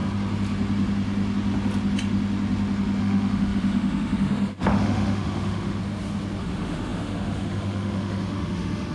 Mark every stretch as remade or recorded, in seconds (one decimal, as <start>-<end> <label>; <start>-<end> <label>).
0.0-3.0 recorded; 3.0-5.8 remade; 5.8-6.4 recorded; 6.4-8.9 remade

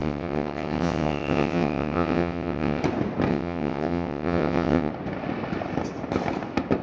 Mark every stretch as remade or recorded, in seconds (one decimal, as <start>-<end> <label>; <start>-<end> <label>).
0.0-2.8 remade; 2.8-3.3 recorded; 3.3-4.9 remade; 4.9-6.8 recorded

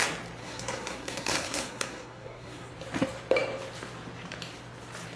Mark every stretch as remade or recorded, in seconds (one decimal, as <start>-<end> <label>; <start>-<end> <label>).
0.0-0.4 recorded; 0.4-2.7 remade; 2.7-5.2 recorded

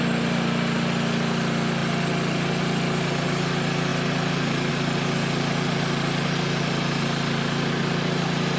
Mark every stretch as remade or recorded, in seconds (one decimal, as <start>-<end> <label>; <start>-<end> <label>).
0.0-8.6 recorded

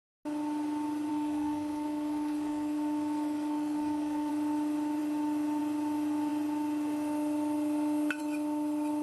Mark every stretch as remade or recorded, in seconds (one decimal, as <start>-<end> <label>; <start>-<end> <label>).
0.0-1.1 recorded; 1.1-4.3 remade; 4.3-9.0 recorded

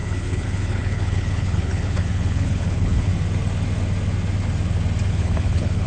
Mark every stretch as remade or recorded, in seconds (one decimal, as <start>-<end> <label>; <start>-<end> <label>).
0.0-3.1 remade; 3.1-5.1 recorded; 5.1-5.9 remade

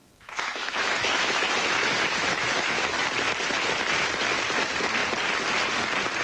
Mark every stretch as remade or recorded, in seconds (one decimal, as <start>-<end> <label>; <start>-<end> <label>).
0.0-3.0 remade; 3.0-6.2 recorded